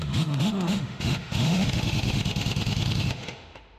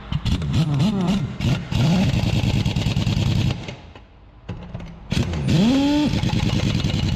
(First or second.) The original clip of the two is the second